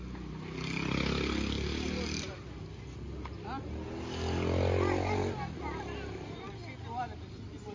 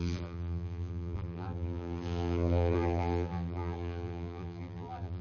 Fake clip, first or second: second